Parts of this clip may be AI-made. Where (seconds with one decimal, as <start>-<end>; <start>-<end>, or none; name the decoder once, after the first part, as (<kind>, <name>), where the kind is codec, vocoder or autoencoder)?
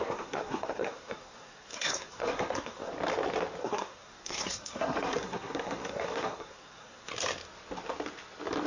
0.0-2.9 (codec, SNAC); 3.6-7.1